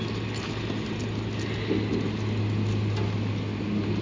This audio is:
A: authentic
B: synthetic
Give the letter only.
A